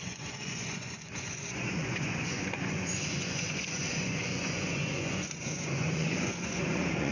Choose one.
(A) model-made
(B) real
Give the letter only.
A